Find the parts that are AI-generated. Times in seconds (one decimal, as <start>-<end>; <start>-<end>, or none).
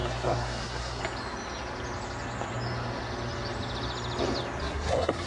0.0-1.0; 4.6-5.3